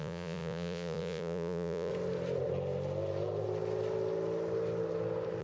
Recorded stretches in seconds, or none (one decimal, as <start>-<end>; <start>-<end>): 1.9-5.4